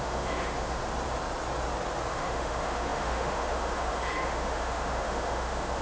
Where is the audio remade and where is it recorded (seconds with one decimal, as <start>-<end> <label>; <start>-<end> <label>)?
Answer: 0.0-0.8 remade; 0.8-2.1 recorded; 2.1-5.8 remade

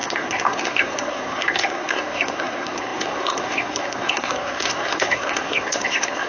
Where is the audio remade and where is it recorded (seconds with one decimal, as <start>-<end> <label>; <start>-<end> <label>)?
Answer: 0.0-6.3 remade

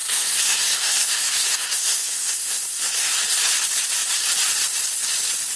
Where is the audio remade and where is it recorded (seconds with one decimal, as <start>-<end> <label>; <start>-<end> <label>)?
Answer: 0.0-3.1 remade; 3.1-5.6 recorded

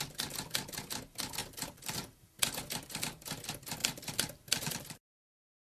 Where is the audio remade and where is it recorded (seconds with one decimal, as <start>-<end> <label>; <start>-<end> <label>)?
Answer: 0.0-1.4 recorded; 1.4-2.2 remade; 2.2-3.8 recorded; 3.8-5.0 remade; 5.0-5.7 recorded